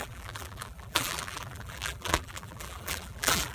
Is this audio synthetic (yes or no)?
yes